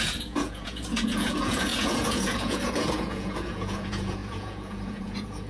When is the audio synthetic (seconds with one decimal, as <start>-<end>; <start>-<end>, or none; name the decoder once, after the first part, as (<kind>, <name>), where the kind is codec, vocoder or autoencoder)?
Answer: 0.0-5.5 (vocoder, Vocos)